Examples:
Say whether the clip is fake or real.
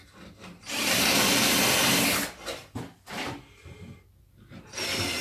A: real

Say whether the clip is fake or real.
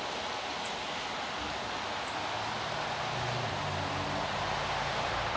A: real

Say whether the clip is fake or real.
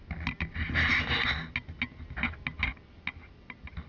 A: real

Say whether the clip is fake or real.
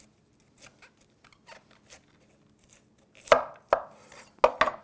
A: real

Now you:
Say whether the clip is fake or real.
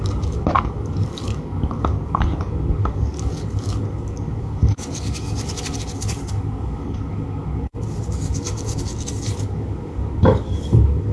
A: fake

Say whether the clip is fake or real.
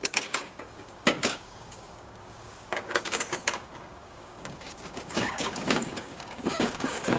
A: fake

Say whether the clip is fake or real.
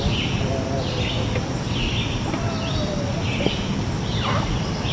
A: real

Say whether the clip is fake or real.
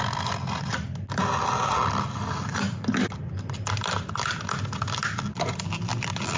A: real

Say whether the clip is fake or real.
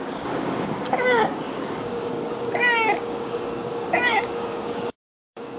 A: fake